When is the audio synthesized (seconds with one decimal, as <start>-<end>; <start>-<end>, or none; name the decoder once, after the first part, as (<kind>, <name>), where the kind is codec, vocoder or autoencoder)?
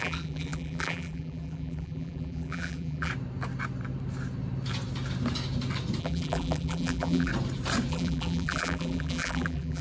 0.0-3.1 (vocoder, BigVGAN v2); 6.0-7.3; 7.9-9.8